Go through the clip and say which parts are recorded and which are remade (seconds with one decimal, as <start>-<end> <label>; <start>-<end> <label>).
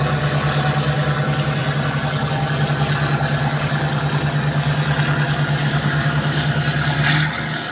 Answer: 0.0-5.6 recorded; 5.6-6.6 remade; 6.6-7.7 recorded